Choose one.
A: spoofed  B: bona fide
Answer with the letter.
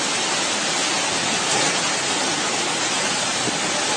B